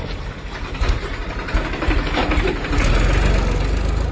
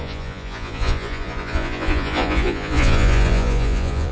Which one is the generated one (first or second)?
second